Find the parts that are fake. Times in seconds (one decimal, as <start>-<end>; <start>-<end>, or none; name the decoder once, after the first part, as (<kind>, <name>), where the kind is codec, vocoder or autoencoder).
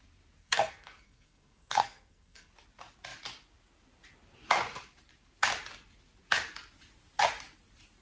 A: 0.4-2.5 (codec, SNAC)